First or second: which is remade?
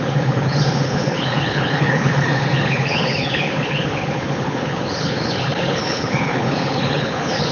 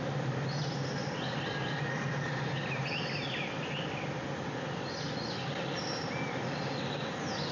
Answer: first